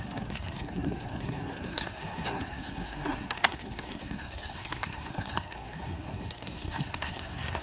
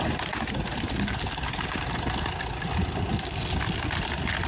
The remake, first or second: first